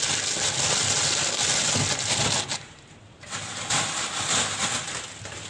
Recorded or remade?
recorded